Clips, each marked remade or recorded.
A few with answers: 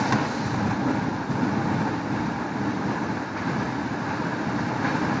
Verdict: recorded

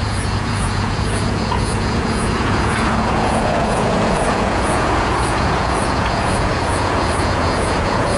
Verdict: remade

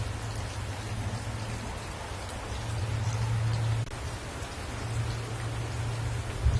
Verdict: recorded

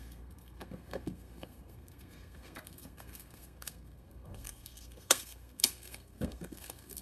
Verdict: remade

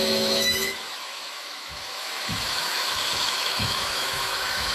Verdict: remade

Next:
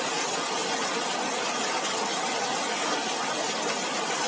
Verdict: recorded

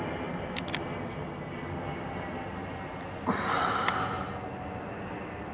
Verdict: recorded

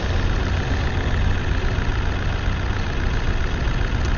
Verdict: recorded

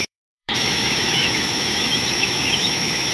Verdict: remade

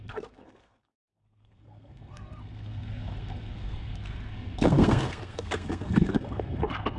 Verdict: remade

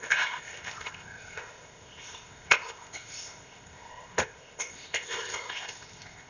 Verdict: remade